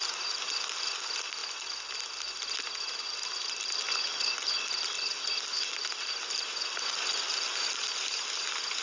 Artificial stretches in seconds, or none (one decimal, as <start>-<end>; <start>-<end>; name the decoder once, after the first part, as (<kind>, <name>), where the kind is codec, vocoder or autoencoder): none